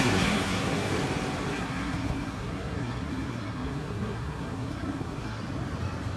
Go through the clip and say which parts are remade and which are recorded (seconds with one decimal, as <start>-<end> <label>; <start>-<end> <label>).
0.0-0.9 remade; 0.9-1.5 recorded; 1.5-5.4 remade; 5.4-6.2 recorded